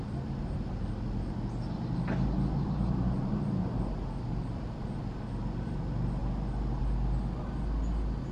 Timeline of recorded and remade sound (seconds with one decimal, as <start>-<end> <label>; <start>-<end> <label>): 0.0-8.3 recorded